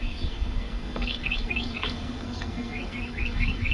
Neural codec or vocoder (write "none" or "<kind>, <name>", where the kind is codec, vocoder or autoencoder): codec, SNAC